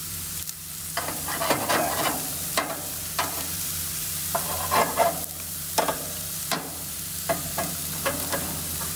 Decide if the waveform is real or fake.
fake